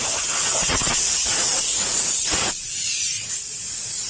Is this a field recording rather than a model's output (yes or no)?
no